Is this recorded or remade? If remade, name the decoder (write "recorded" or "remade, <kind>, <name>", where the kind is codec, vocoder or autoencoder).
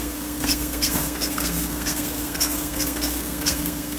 remade, codec, SNAC